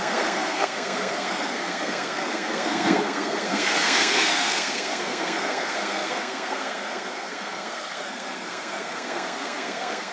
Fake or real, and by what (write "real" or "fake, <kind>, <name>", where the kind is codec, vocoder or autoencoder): fake, codec, SNAC